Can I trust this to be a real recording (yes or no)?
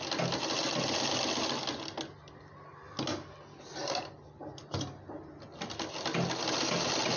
yes